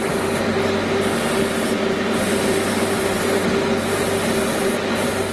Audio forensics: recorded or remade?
recorded